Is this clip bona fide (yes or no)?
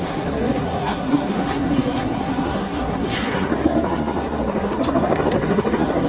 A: no